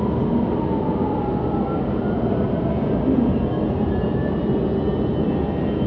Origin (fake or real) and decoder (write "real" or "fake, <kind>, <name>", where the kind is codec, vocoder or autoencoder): real